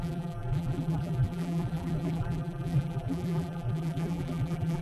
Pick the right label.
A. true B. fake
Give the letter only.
B